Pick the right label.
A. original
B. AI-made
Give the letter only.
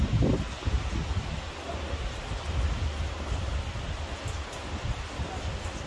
A